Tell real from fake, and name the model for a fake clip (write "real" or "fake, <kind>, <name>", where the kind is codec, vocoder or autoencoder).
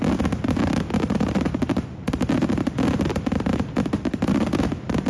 real